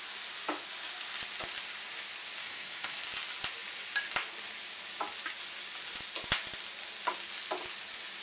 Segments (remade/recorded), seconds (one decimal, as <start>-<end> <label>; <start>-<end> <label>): 0.0-2.4 recorded; 2.4-3.0 remade; 3.0-8.2 recorded